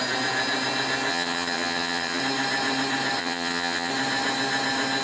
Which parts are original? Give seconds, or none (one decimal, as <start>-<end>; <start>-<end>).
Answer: 0.0-1.1; 2.2-3.2; 3.9-5.0